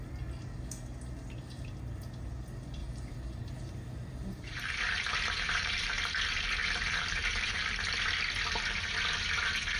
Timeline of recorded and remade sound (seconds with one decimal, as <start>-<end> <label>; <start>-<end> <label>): 0.0-2.8 recorded; 2.8-6.0 remade; 6.0-6.6 recorded; 6.6-8.1 remade; 8.1-9.8 recorded